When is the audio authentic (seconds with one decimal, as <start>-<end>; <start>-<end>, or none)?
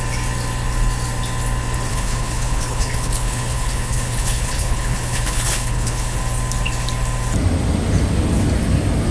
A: 0.0-1.9; 6.2-9.1